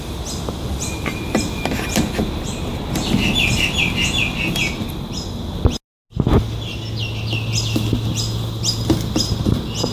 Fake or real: real